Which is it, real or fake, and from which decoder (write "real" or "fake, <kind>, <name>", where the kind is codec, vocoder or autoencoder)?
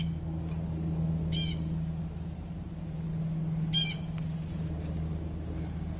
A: real